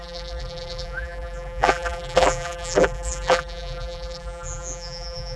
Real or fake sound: fake